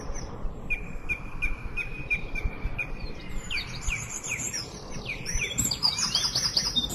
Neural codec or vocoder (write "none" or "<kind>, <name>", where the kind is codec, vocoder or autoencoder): vocoder, BigVGAN v2